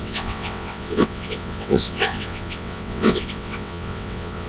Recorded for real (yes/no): no